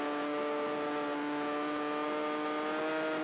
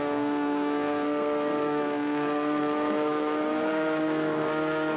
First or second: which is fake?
second